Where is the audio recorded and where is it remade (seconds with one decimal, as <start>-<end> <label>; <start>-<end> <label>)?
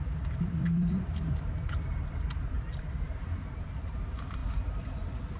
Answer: 0.0-4.4 remade; 4.4-5.4 recorded